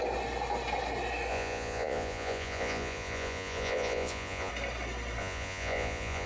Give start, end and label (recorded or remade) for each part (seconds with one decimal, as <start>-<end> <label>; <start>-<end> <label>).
0.0-1.3 recorded; 1.3-4.5 remade; 4.5-5.2 recorded; 5.2-6.3 remade